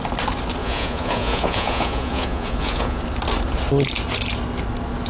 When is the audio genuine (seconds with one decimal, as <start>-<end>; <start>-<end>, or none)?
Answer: 0.0-0.6; 3.0-5.1